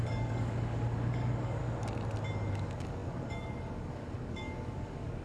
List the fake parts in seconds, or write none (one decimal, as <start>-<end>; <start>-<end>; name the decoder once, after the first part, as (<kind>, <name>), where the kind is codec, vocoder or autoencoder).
0.0-1.6 (codec, DAC); 2.5-5.2